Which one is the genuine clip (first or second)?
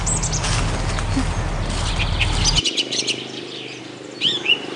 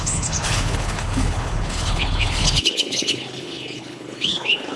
first